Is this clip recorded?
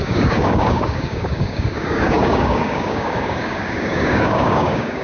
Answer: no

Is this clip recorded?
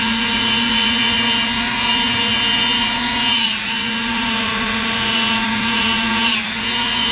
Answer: no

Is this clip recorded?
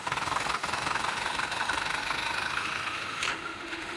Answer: no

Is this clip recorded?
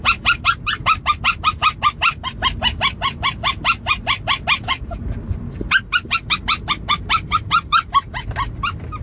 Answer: yes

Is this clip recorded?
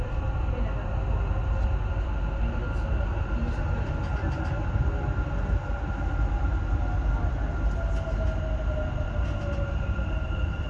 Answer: yes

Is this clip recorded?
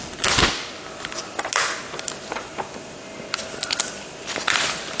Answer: yes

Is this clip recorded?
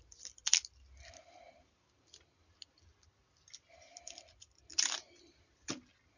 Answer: yes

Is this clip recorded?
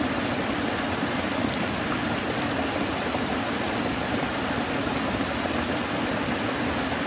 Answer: yes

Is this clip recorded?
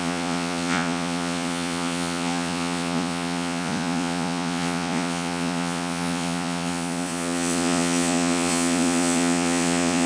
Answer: no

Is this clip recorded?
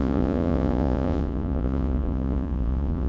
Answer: no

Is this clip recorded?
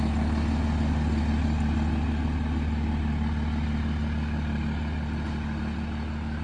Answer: yes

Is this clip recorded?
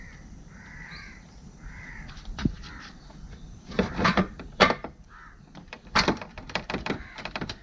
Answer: no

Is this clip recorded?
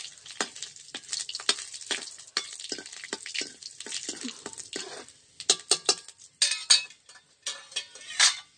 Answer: yes